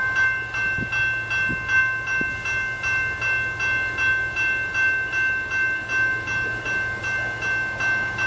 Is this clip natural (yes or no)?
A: yes